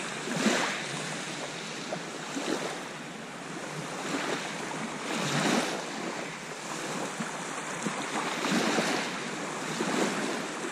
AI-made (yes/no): no